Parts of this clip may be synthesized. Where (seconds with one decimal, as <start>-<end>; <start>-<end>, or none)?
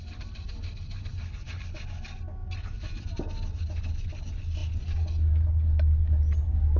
none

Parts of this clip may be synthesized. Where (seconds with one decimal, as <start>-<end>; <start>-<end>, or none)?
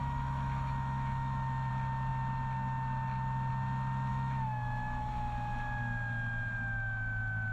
0.0-1.7; 4.1-5.1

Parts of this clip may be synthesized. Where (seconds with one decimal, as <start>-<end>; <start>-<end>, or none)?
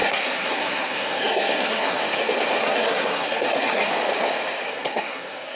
0.0-2.0; 2.6-3.9; 4.7-5.6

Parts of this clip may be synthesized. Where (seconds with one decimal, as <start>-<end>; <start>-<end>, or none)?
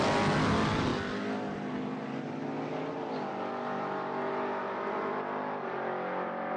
none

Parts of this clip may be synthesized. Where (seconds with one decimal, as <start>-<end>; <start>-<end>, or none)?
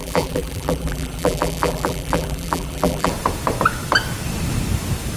0.0-3.1